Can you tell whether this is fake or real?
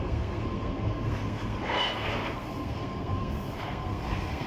fake